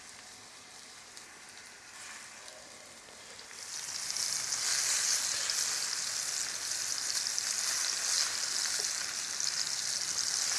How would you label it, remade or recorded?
recorded